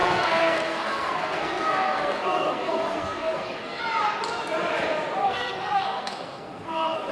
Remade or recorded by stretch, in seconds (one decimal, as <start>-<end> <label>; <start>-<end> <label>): 0.0-3.8 remade; 3.8-5.2 recorded; 5.2-7.1 remade